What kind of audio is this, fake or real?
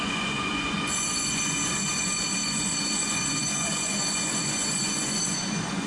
fake